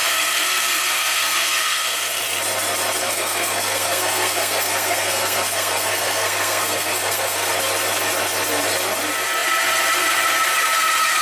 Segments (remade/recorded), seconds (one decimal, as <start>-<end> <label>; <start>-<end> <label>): 0.0-2.2 remade; 2.2-3.0 recorded; 3.0-7.5 remade; 7.5-11.2 recorded